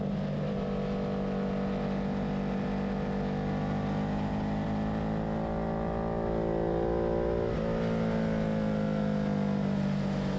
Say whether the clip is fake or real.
real